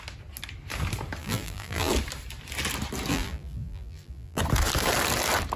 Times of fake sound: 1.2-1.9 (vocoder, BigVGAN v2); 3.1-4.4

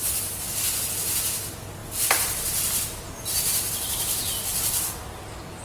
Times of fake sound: none

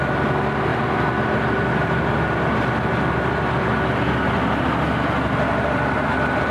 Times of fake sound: none

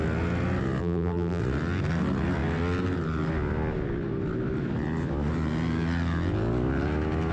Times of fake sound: 0.8-1.4 (vocoder, BigVGAN v2)

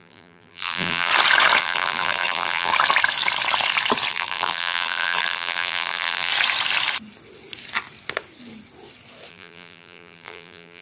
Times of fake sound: 0.0-1.1 (vocoder, BigVGAN v2); 1.6-2.7; 4.1-6.3; 9.3-10.8

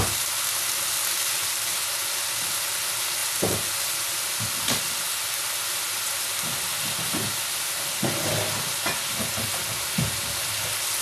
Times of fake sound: none

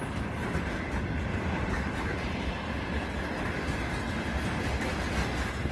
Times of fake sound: 1.3-2.6 (vocoder, BigVGAN v2)